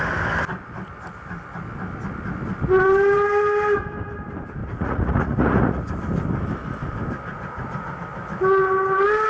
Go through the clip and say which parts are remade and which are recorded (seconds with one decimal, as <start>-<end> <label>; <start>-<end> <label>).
0.0-4.6 recorded; 4.6-5.9 remade; 5.9-7.3 recorded; 7.3-7.9 remade; 7.9-9.3 recorded